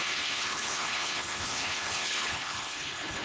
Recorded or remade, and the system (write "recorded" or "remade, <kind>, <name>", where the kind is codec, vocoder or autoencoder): remade, codec, HILCodec